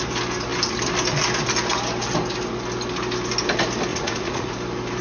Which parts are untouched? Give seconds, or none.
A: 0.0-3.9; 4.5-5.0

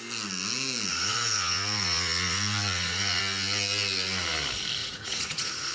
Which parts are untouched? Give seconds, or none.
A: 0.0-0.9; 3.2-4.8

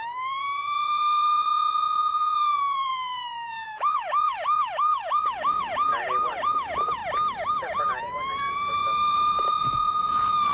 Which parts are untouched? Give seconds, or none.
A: 7.0-7.5

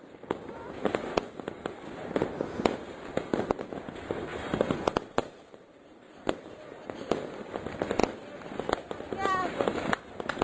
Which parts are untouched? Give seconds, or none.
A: 0.0-4.3; 6.3-10.4

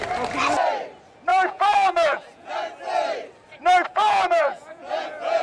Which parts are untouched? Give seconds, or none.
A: 0.0-1.3; 2.5-3.9

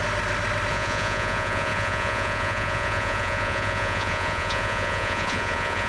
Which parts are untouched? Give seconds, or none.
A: 0.0-0.7

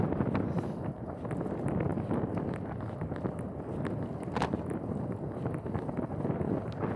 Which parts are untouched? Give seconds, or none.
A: 0.0-7.0

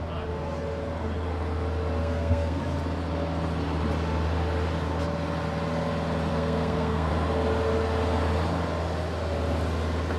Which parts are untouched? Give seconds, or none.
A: 0.0-2.0; 2.6-6.3; 7.1-10.2